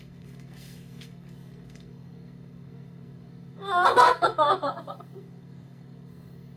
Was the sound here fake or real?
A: fake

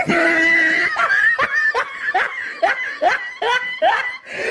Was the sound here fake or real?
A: real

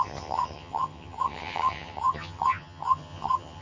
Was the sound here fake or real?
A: fake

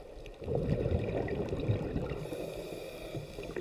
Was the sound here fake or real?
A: real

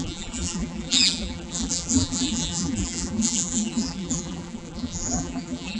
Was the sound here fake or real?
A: fake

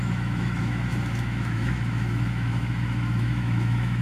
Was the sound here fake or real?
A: fake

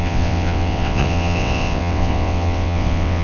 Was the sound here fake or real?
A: fake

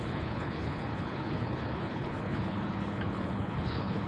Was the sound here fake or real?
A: fake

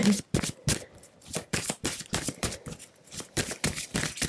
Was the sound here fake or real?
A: fake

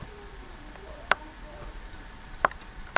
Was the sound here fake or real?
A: fake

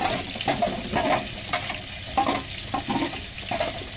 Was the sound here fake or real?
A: real